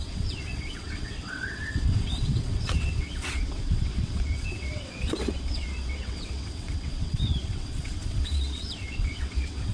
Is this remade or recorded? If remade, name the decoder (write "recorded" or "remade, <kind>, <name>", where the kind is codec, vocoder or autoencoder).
remade, vocoder, WaveNeXt